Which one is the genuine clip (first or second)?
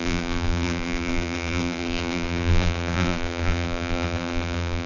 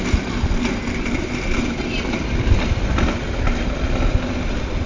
second